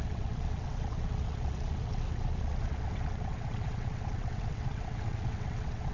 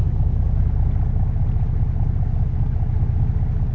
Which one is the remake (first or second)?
first